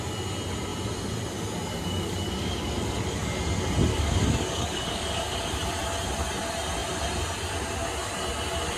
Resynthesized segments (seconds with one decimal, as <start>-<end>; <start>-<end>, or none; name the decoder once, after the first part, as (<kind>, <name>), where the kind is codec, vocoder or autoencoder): 1.7-3.0 (codec, DAC); 3.9-5.5